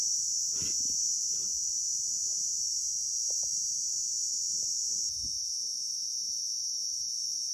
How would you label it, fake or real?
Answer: fake